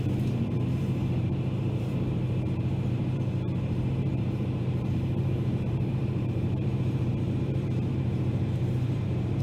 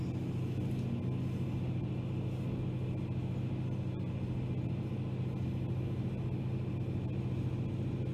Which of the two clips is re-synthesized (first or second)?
first